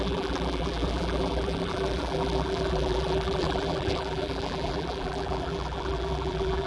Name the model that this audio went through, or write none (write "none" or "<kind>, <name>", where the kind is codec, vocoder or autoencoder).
vocoder, BigVGAN v2